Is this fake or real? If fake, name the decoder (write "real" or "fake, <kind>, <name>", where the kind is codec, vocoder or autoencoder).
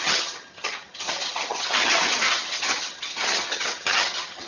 fake, vocoder, HiFi-GAN